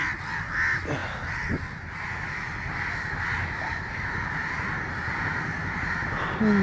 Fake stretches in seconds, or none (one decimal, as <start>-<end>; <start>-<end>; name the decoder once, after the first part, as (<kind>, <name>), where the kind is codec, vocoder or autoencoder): none